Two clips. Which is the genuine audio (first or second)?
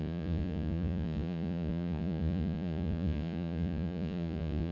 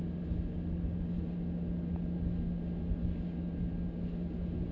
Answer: second